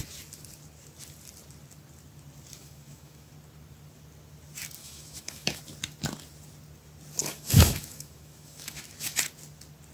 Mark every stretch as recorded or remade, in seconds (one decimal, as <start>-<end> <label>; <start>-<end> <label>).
0.0-2.6 recorded; 2.6-3.3 remade; 3.3-4.8 recorded; 4.8-5.6 remade; 5.6-7.2 recorded; 7.2-9.2 remade; 9.2-9.9 recorded